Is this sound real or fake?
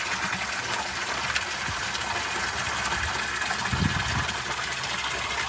real